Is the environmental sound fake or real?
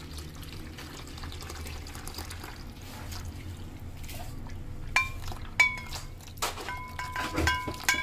real